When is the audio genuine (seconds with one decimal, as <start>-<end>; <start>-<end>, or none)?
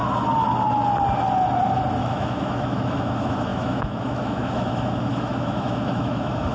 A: 0.0-2.0